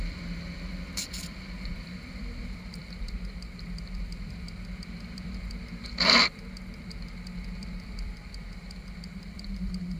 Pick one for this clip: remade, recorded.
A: remade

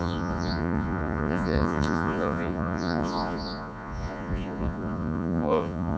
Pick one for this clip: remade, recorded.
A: remade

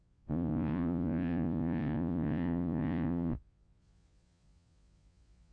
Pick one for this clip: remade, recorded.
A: remade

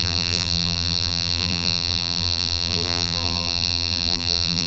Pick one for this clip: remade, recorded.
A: remade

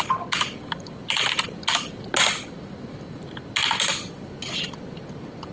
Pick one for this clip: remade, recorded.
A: recorded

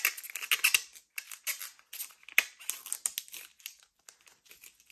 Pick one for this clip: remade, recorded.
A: recorded